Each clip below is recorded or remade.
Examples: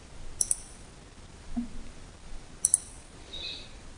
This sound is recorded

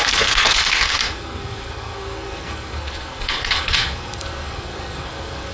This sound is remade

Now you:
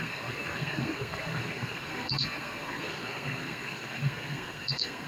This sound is remade